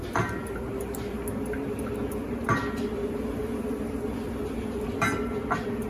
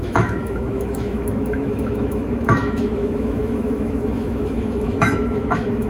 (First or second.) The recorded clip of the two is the first